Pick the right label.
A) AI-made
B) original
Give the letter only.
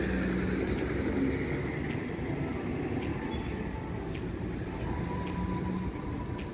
B